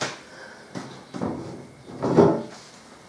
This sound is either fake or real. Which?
real